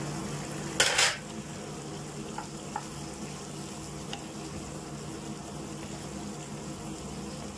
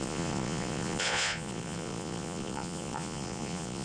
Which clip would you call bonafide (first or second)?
first